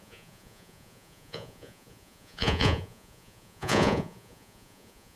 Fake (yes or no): yes